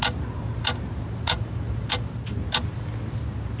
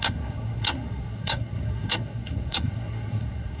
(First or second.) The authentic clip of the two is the first